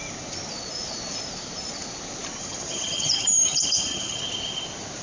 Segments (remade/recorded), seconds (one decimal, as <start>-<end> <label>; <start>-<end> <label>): 0.0-2.4 recorded; 2.4-4.2 remade; 4.2-5.0 recorded